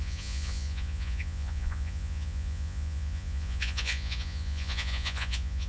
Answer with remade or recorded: remade